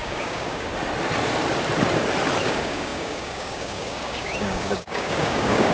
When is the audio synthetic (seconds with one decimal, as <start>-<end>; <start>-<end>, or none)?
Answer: 0.0-0.7; 2.4-5.7